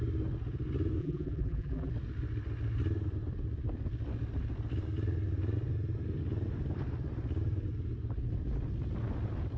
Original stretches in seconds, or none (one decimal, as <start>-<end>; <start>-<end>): 0.0-1.0; 1.9-9.6